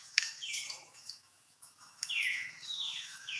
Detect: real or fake fake